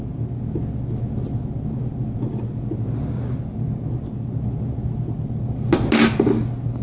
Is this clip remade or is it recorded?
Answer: recorded